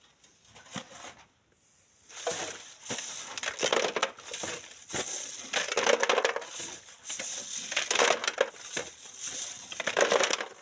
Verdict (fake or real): real